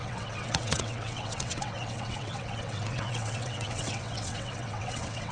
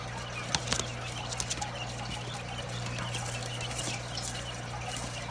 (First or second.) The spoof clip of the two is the first